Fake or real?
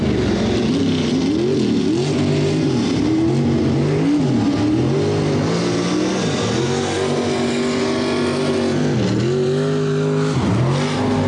real